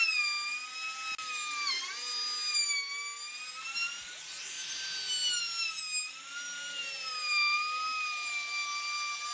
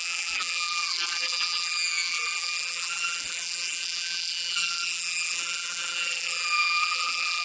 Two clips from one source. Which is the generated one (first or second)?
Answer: second